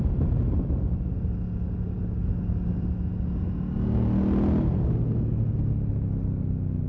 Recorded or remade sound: recorded